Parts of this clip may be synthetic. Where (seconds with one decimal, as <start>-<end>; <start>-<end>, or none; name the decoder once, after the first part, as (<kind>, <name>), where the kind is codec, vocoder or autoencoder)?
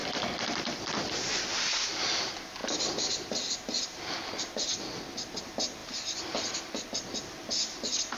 0.0-1.1 (vocoder, BigVGAN v2); 2.6-4.7; 5.8-7.6